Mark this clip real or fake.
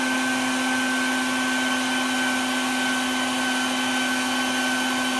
real